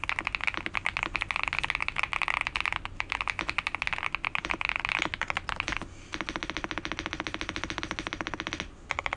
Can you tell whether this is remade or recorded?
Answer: recorded